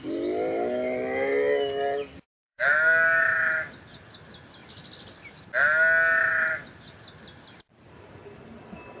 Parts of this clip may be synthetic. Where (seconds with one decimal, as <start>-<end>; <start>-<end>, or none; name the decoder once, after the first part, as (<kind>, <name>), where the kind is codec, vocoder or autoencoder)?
2.1-3.2 (codec, DAC)